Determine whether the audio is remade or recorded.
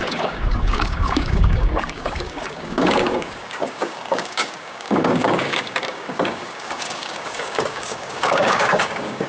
remade